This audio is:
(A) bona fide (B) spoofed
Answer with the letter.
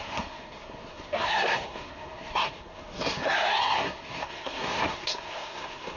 B